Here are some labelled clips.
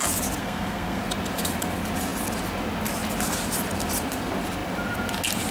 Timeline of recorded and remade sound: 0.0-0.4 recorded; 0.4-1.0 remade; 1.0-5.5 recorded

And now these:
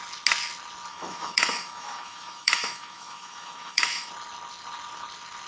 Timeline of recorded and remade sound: 0.0-0.9 recorded; 0.9-4.1 remade; 4.1-5.5 recorded

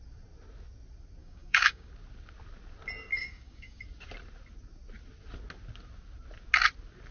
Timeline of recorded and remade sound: 0.0-1.2 recorded; 1.2-1.9 remade; 1.9-3.1 recorded; 3.1-3.8 remade; 3.8-7.1 recorded

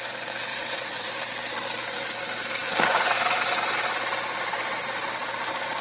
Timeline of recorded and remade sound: 0.0-0.5 recorded; 0.5-1.1 remade; 1.1-5.8 recorded

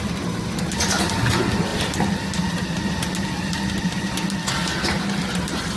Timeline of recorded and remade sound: 0.0-5.8 recorded

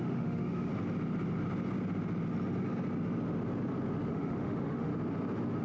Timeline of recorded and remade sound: 0.0-0.7 remade; 0.7-4.1 recorded; 4.1-4.9 remade; 4.9-5.6 recorded

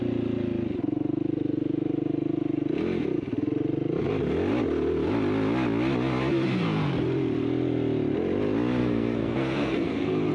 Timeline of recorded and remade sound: 0.0-8.8 recorded; 8.8-10.3 remade